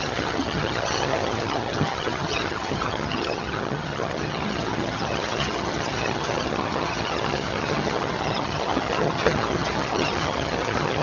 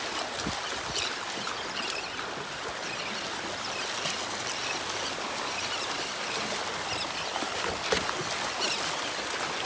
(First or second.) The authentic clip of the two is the second